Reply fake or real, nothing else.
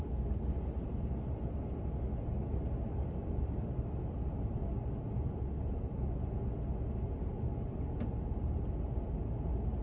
real